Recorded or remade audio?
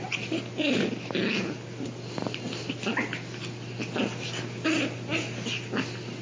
recorded